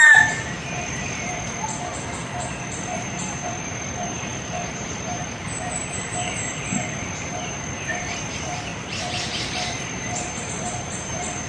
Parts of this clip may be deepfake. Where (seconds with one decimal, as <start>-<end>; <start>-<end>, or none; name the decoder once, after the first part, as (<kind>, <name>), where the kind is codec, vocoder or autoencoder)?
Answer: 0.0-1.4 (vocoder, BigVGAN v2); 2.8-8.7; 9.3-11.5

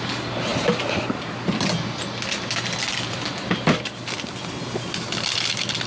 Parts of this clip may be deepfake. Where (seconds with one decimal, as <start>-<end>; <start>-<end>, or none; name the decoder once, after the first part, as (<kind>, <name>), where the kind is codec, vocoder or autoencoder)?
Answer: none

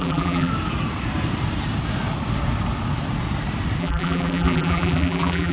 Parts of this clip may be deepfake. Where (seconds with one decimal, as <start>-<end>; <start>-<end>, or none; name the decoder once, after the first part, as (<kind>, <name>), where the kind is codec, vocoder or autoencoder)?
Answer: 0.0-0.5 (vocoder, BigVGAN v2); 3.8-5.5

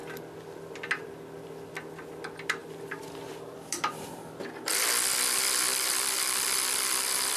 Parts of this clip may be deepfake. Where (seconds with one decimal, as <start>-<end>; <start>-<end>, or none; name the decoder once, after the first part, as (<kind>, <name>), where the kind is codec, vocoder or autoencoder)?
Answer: 2.6-4.4 (vocoder, BigVGAN v2); 5.7-6.8

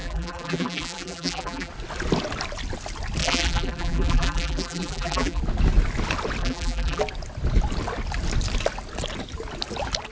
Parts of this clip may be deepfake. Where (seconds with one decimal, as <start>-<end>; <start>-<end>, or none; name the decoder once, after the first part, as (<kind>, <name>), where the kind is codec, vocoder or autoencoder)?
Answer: 0.0-1.7 (vocoder, BigVGAN v2); 3.2-5.4; 6.4-7.0

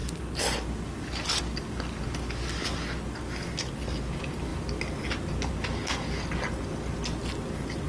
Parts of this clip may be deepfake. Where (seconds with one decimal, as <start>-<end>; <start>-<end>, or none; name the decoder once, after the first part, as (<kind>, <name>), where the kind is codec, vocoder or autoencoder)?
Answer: none

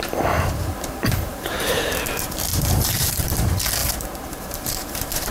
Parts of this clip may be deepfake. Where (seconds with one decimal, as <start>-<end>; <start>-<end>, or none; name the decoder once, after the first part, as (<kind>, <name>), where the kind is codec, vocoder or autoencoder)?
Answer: 1.3-1.9 (vocoder, BigVGAN v2); 2.5-3.4; 3.8-5.3